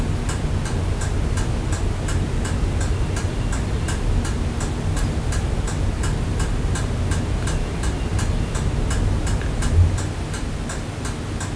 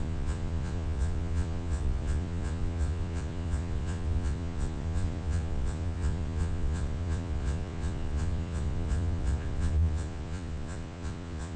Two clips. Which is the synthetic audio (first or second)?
second